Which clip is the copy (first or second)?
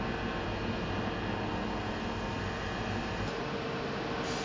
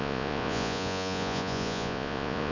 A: second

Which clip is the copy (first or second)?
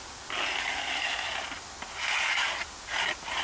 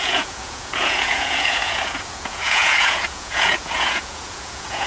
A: second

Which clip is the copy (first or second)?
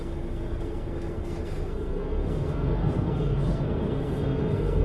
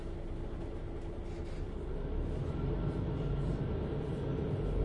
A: first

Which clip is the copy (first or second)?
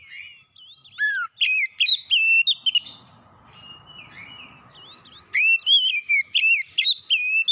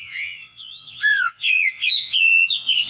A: second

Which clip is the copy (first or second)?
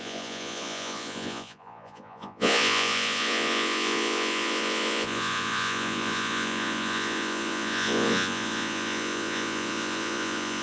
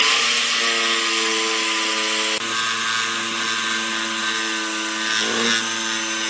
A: first